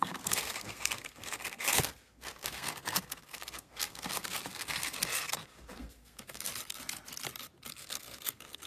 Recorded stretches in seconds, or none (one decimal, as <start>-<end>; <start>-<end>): 6.5-7.7